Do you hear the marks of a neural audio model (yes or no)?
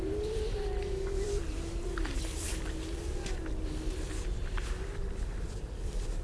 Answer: no